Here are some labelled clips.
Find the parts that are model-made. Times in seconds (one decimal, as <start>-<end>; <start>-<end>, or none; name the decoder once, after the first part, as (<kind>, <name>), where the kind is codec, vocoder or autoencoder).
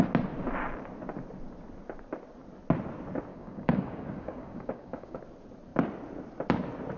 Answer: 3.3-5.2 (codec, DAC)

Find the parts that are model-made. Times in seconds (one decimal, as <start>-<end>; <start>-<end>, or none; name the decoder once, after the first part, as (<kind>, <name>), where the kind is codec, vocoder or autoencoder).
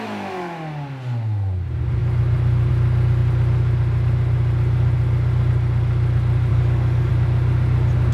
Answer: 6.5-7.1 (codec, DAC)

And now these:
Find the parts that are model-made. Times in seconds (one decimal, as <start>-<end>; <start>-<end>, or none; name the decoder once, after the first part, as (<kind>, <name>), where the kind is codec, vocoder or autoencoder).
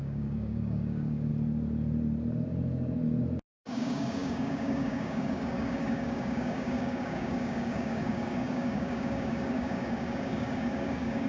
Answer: 0.0-1.3 (codec, DAC); 3.6-11.3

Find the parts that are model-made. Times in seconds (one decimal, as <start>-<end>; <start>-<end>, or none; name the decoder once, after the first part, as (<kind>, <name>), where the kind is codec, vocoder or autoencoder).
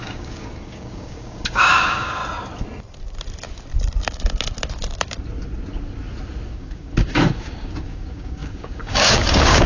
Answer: 0.0-2.2 (codec, DAC); 6.5-9.7